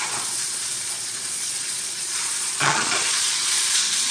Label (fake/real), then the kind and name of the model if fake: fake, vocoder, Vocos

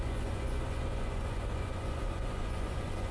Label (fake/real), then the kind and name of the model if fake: fake, vocoder, Vocos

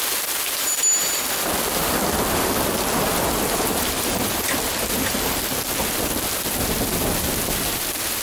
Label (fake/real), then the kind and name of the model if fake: real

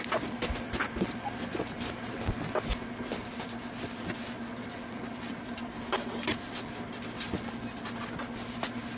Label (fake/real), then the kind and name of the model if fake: real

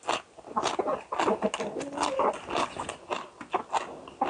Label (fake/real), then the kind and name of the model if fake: real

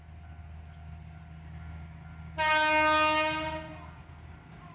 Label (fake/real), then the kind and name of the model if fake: real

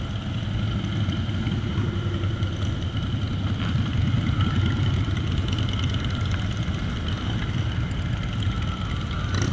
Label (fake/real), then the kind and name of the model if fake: real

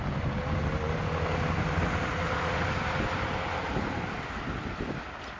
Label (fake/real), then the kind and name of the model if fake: real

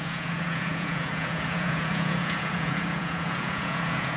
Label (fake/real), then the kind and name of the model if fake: fake, vocoder, Vocos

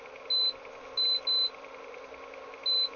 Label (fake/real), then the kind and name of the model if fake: real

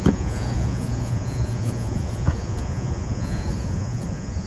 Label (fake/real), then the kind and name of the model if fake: fake, vocoder, Vocos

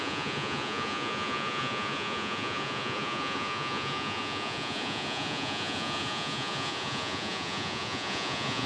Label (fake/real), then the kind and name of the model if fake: fake, vocoder, Vocos